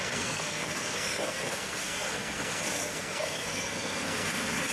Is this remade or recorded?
remade